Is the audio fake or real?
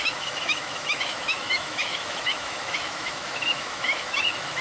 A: fake